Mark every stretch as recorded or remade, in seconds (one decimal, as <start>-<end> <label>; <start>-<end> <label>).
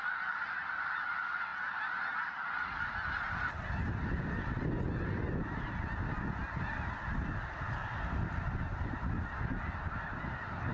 0.0-10.7 recorded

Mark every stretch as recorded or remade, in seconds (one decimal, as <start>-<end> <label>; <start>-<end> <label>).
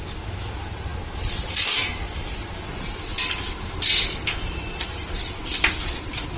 0.0-6.4 recorded